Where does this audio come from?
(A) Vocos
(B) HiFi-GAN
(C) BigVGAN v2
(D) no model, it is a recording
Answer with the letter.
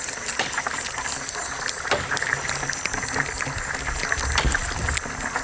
D